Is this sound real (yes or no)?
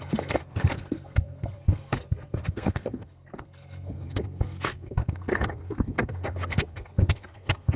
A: no